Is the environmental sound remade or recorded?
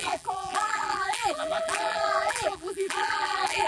remade